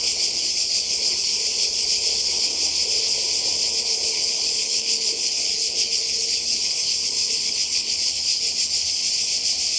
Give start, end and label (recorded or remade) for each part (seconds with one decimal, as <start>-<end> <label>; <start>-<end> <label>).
0.0-2.5 remade; 2.5-3.8 recorded; 3.8-9.0 remade; 9.0-9.8 recorded